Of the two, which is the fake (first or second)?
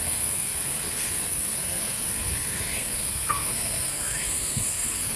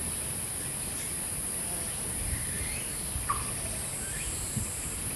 first